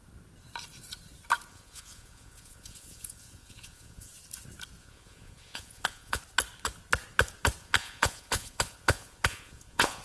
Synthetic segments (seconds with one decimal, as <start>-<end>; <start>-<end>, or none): 1.5-4.1; 4.8-6.2; 7.6-10.0